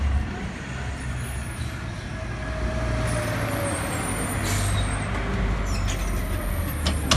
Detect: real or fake real